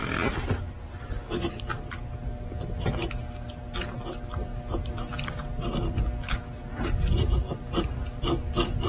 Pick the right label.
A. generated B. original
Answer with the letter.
B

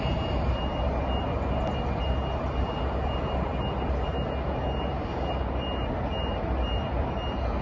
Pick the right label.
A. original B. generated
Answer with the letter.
A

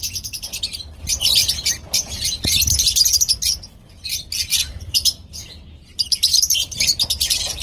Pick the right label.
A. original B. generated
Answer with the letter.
B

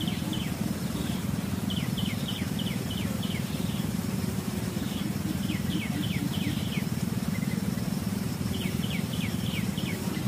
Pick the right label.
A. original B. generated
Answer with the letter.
B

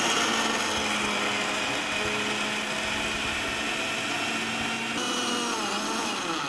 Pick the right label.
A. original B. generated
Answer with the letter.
A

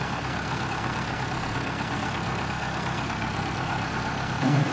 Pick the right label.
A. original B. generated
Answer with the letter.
B